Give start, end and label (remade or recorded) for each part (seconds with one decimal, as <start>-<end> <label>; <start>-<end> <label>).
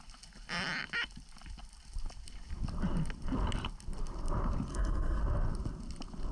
0.0-4.7 recorded; 4.7-5.2 remade; 5.2-6.3 recorded